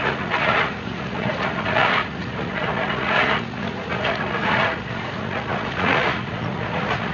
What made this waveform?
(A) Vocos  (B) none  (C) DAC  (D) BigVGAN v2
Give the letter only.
A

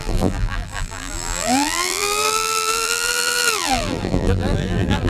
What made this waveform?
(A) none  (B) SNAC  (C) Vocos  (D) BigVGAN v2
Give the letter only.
D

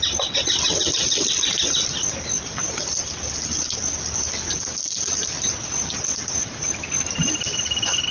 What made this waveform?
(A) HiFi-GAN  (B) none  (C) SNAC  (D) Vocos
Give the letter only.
B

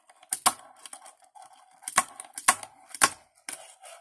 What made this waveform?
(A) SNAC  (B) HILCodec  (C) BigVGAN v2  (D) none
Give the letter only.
D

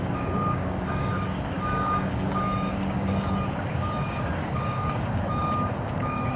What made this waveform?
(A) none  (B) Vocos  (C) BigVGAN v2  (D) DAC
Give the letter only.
D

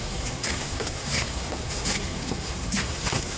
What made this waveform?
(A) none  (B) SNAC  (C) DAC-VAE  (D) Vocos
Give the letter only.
B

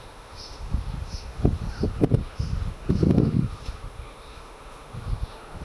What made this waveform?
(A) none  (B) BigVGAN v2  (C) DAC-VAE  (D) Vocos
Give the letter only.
C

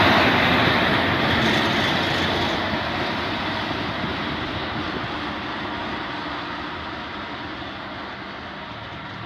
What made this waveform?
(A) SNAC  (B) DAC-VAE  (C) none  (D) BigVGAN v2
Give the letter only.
C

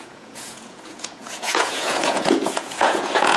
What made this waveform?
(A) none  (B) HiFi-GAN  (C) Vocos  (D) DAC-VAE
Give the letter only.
C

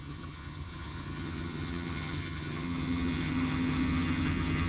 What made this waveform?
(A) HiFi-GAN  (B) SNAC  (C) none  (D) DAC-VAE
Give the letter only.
A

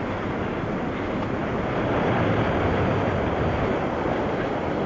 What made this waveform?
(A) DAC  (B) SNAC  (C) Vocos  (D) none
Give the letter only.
D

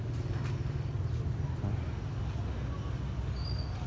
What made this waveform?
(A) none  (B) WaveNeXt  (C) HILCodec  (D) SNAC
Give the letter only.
A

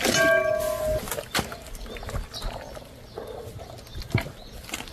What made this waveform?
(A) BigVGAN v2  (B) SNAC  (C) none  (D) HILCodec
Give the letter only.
C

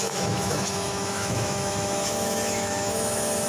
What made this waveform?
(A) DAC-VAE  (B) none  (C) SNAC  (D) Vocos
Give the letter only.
A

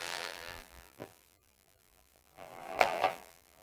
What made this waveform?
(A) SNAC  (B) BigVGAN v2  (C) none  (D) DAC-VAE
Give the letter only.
B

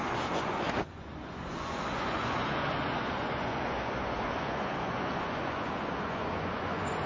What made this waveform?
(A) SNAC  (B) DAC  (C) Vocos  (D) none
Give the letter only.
C